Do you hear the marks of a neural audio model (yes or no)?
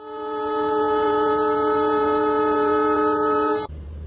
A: yes